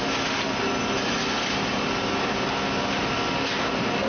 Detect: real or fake real